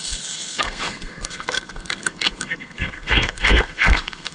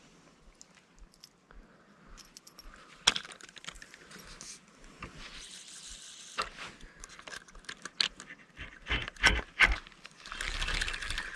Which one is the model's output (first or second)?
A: first